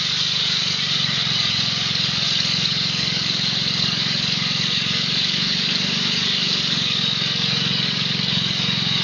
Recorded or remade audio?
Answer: remade